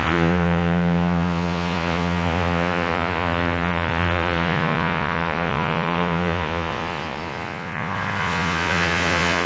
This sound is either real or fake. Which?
fake